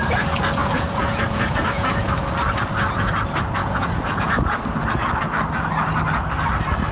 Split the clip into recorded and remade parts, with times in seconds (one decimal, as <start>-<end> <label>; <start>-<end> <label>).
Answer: 0.0-0.6 recorded; 0.6-2.1 remade; 2.1-3.6 recorded; 3.6-4.6 remade; 4.6-6.9 recorded